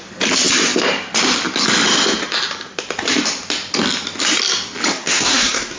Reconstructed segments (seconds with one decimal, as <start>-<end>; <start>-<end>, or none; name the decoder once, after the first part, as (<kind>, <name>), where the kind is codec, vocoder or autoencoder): 4.9-5.8 (codec, SNAC)